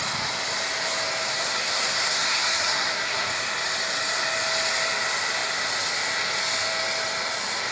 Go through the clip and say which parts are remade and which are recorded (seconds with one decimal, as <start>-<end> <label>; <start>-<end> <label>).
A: 0.0-1.3 recorded; 1.3-3.3 remade; 3.3-7.7 recorded